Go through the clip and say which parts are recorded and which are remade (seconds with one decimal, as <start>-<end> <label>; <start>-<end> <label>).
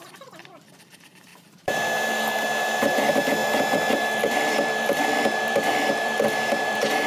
0.0-1.3 remade; 1.3-2.9 recorded; 2.9-7.1 remade